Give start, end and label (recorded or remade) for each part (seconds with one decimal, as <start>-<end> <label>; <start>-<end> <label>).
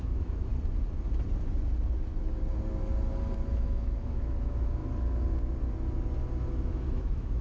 0.0-0.5 remade; 0.5-3.5 recorded; 3.5-4.8 remade; 4.8-6.7 recorded; 6.7-7.4 remade